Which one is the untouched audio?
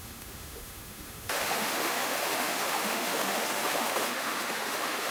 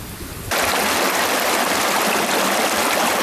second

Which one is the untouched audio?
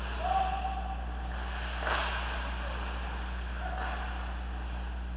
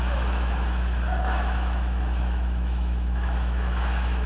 first